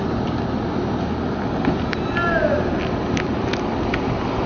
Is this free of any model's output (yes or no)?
yes